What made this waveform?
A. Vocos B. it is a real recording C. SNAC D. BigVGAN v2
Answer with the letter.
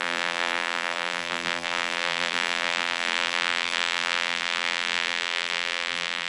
D